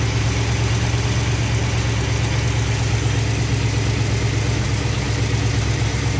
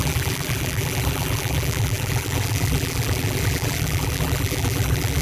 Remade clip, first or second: second